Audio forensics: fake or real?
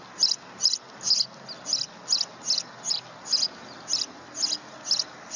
real